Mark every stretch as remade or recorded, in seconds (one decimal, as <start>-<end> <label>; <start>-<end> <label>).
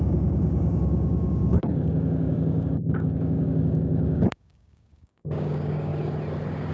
0.0-5.9 remade; 5.9-6.7 recorded